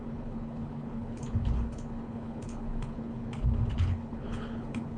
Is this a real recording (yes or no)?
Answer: no